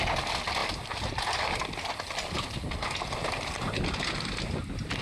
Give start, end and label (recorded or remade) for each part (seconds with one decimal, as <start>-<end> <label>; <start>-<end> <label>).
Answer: 0.0-5.0 recorded